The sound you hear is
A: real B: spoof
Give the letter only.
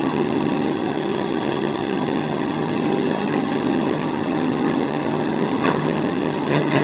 B